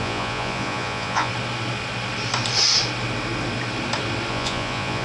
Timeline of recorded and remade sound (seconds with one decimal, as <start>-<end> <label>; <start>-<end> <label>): 0.0-1.3 remade; 1.3-4.3 recorded; 4.3-5.0 remade